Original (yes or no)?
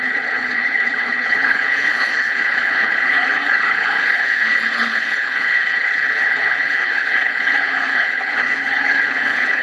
no